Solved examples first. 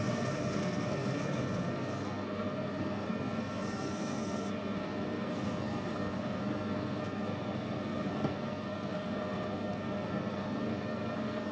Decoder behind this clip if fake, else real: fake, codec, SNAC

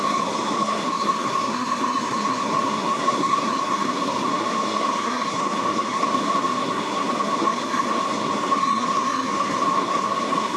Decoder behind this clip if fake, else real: fake, codec, SNAC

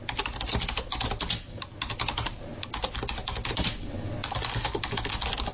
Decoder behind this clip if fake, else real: real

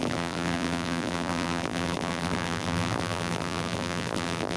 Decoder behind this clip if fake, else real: fake, vocoder, BigVGAN v2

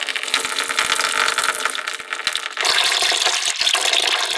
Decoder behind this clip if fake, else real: real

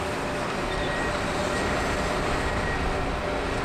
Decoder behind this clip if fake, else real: real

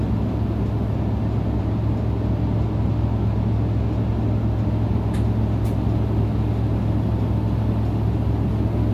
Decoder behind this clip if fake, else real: real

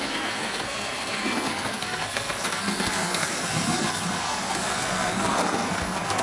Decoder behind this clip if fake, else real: fake, codec, SNAC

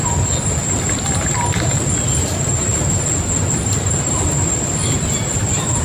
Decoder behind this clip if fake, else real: real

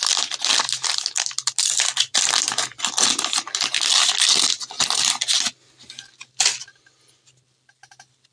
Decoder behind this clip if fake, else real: real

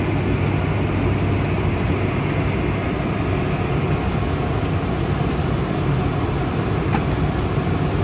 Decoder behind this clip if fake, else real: real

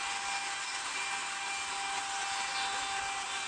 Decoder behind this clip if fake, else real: real